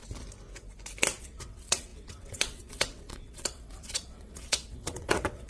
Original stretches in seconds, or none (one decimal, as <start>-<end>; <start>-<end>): 0.0-1.2